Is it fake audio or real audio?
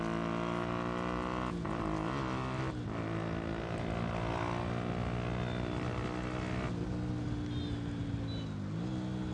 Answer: real